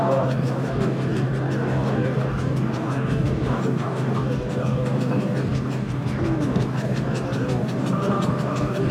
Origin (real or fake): fake